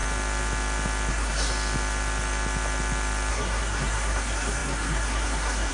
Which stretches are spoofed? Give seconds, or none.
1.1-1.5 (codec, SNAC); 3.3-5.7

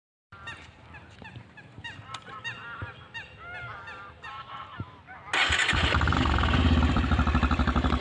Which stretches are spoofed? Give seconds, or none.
0.0-5.1 (vocoder, BigVGAN v2); 6.8-8.0

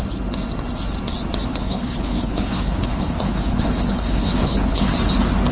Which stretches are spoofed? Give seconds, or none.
1.5-4.8 (codec, HILCodec)

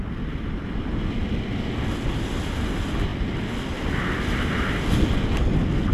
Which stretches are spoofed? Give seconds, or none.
none

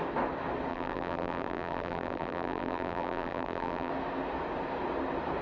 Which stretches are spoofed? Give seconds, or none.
0.7-3.9 (vocoder, BigVGAN v2)

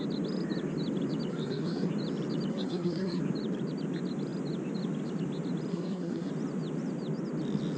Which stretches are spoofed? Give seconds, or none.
1.3-1.9 (codec, SNAC); 2.5-3.2; 5.7-6.3

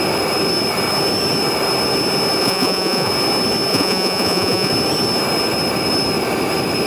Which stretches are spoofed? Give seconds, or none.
2.4-3.1 (vocoder, Vocos); 3.7-4.7

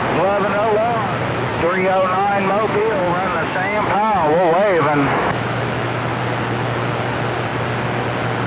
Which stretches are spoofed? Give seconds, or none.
1.5-6.2 (autoencoder, DAC-VAE)